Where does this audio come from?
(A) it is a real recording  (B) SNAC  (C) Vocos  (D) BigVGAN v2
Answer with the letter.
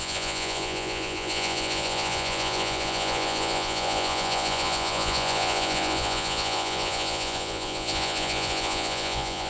C